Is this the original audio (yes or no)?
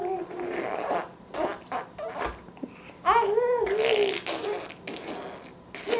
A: yes